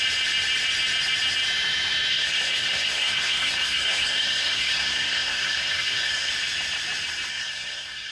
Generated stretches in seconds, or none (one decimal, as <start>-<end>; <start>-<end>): 2.1-6.3; 7.3-8.1